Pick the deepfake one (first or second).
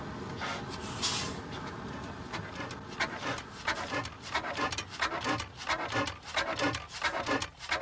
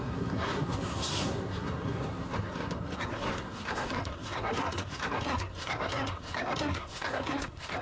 second